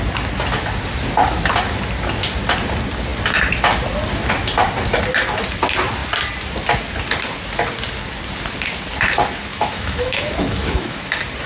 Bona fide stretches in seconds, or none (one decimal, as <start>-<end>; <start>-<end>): 0.0-9.5; 11.1-11.5